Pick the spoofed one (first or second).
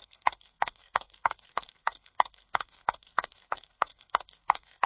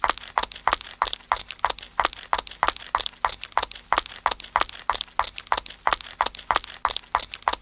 first